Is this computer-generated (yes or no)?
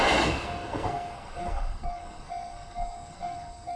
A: yes